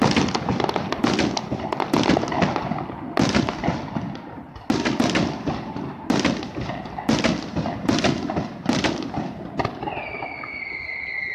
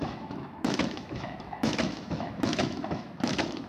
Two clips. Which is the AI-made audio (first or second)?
second